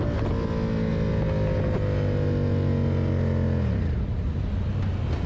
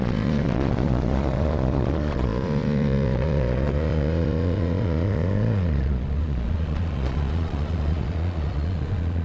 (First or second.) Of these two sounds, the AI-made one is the second